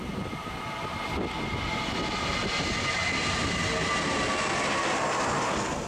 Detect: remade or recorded recorded